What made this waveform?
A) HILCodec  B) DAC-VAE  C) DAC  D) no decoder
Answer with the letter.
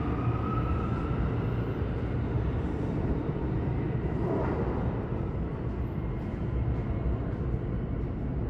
D